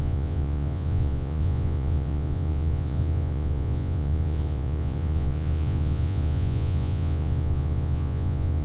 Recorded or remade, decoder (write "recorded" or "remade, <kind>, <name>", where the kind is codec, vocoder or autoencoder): remade, vocoder, Vocos